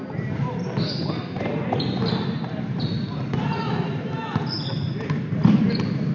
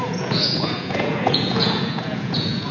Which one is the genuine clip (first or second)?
first